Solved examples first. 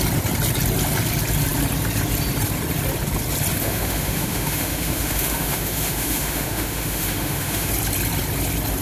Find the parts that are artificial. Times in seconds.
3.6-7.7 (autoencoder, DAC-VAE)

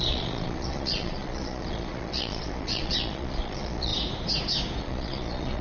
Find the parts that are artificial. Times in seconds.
0.0-3.9 (vocoder, Vocos); 4.8-5.6

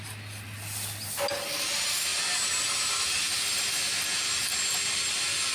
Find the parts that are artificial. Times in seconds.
none